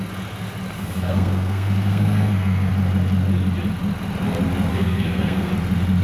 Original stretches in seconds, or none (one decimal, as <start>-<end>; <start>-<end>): 0.0-0.8; 2.7-4.7; 5.5-6.0